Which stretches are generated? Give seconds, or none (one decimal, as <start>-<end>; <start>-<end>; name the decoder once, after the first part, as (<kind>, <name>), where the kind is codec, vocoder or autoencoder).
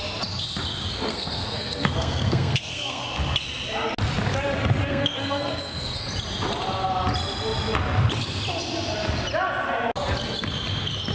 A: 1.1-3.0 (codec, SNAC); 4.9-6.0